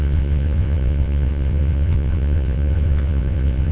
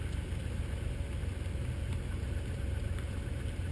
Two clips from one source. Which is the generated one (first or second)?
first